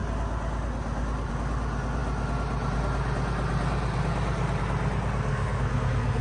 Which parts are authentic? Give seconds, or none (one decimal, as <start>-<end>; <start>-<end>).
0.0-5.3